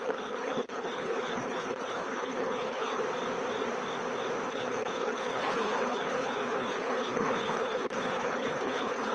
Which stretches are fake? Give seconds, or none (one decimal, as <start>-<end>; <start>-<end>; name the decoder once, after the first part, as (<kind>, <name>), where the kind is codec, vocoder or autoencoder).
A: 0.0-3.0 (codec, HILCodec); 4.5-9.1